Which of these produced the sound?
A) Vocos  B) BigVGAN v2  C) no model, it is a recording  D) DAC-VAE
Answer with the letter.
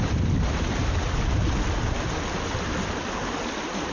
C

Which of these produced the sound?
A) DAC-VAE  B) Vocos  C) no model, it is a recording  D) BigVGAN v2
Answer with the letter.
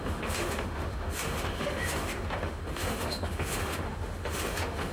A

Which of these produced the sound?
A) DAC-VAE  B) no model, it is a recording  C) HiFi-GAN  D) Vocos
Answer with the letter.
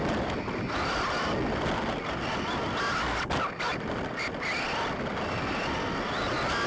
B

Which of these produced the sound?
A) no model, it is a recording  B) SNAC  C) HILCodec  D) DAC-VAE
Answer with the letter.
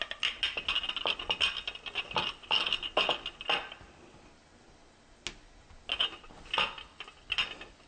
A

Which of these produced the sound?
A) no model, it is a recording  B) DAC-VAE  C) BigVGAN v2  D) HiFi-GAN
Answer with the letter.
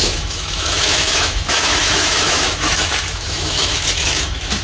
B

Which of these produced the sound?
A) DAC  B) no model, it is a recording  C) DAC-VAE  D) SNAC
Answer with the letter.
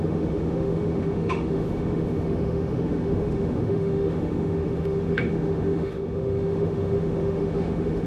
C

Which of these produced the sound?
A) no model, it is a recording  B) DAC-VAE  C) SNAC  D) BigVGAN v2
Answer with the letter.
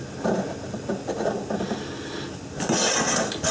A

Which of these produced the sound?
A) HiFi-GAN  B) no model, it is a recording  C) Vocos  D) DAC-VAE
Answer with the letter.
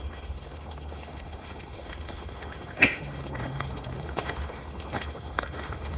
D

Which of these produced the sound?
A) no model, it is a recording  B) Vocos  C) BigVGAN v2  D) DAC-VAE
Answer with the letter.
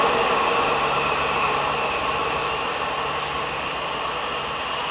A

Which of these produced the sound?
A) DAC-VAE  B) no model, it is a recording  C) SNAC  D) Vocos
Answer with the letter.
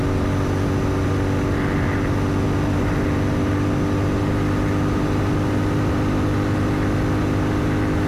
B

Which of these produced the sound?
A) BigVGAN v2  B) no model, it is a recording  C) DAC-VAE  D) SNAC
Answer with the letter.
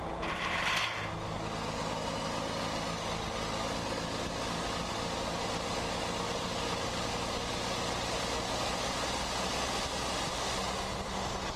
B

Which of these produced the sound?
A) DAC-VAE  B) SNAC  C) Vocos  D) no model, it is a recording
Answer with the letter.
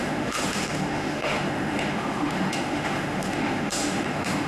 A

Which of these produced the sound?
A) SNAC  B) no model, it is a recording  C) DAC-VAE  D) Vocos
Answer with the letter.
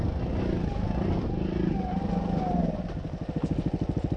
B